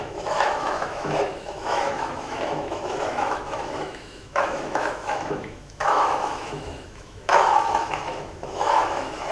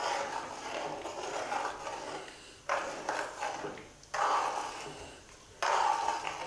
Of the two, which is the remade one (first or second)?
first